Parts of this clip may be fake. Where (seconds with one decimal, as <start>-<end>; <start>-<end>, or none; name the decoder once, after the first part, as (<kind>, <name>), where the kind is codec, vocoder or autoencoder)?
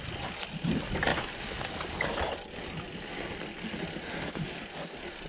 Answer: none